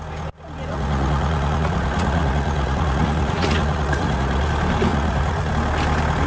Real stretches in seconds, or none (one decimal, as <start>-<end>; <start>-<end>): 0.0-0.7; 4.5-4.9; 5.5-6.3